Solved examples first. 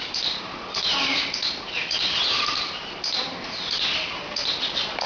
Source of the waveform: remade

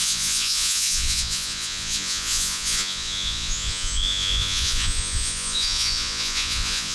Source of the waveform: remade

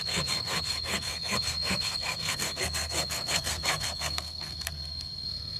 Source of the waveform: remade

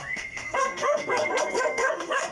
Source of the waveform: remade